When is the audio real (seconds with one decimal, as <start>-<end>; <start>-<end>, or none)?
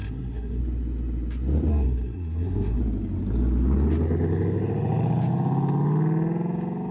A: 0.6-1.7; 2.8-6.9